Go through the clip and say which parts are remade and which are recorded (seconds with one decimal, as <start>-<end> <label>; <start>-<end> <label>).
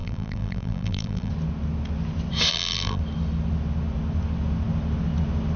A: 0.0-1.3 remade; 1.3-2.5 recorded; 2.5-3.0 remade; 3.0-5.6 recorded